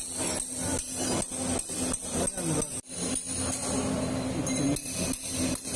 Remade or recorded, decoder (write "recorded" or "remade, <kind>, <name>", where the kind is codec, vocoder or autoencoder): recorded